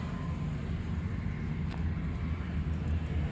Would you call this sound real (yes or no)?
yes